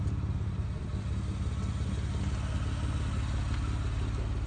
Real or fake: real